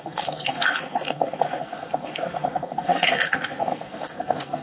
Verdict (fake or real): fake